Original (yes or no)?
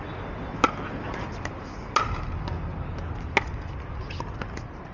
yes